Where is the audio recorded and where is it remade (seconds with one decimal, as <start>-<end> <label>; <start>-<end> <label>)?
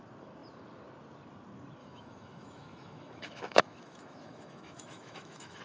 0.0-1.8 recorded; 1.8-5.6 remade